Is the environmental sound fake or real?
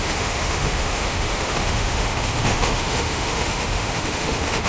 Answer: fake